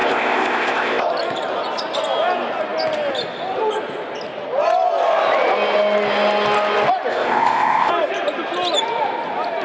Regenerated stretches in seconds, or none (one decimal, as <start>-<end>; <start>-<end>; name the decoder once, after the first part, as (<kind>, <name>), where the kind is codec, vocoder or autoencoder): 0.0-1.1 (codec, ZipCodec); 7.1-7.9